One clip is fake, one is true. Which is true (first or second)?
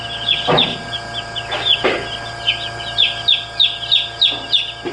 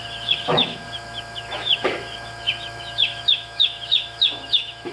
first